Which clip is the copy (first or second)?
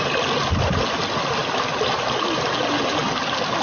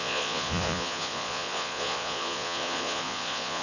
second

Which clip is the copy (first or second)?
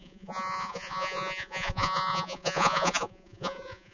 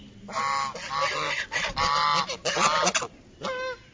first